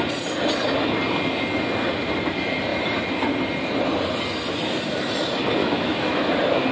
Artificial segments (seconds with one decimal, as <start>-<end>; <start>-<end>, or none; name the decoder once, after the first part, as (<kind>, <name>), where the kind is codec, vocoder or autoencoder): 5.6-6.3 (autoencoder, DAC-VAE)